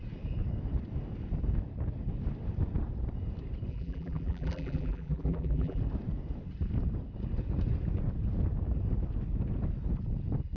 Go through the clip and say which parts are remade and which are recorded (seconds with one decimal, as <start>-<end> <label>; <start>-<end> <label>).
0.0-3.7 recorded; 3.7-5.8 remade; 5.8-10.6 recorded